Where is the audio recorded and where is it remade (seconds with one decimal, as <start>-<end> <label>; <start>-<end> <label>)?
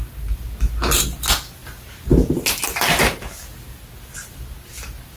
0.0-5.2 recorded